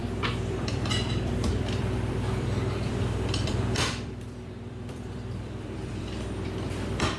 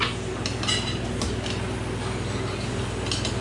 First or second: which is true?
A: second